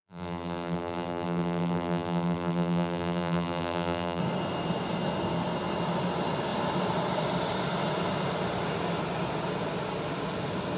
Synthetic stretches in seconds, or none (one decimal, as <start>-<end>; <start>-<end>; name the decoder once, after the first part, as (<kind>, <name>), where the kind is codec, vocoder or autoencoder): 0.0-4.2 (vocoder, BigVGAN v2)